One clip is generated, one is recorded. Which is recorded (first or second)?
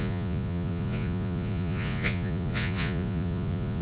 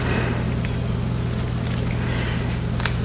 second